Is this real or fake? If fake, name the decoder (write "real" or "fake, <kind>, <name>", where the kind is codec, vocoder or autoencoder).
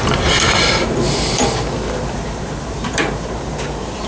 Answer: fake, vocoder, BigVGAN v2